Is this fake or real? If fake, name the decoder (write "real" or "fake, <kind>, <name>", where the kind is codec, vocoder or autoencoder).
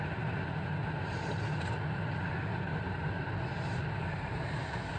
real